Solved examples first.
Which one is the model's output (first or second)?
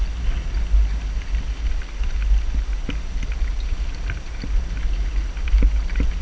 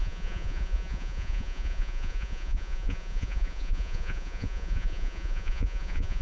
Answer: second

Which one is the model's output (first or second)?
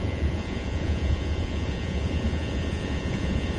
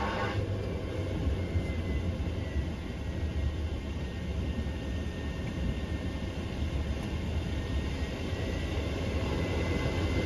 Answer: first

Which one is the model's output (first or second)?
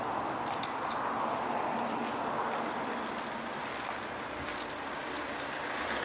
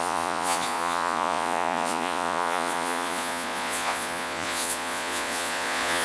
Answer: second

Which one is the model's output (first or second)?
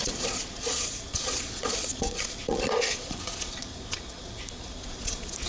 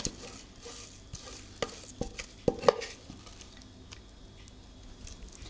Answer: first